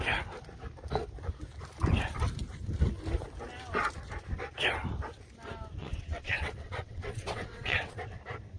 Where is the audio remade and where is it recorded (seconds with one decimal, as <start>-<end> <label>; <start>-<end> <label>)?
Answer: 0.0-5.8 recorded; 5.8-8.0 remade; 8.0-8.6 recorded